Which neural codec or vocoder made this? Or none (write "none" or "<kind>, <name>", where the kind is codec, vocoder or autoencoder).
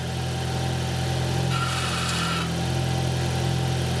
none